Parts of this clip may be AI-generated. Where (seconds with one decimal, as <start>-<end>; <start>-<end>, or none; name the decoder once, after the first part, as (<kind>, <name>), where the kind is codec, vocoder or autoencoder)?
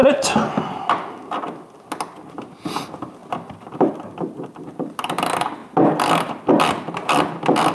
none